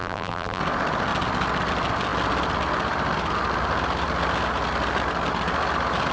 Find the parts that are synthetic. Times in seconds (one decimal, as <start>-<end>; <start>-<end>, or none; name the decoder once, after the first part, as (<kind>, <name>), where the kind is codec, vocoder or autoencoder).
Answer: 0.0-0.6 (vocoder, BigVGAN v2)

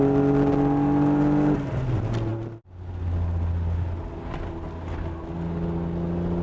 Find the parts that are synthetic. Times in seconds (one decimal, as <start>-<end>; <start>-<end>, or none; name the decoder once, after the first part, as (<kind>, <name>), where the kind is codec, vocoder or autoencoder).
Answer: none

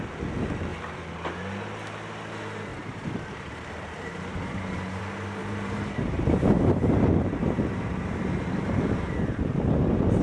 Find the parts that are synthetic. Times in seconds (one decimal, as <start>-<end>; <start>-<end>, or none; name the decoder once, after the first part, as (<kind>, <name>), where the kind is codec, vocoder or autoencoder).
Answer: 2.7-5.0 (vocoder, BigVGAN v2); 5.4-10.2